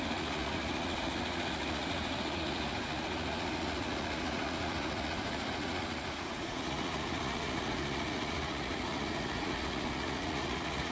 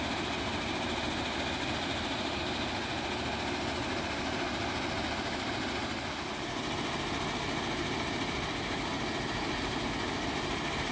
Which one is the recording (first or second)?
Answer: second